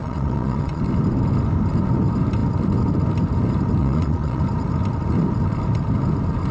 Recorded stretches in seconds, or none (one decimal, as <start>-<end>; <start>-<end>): 0.8-3.8; 4.4-6.5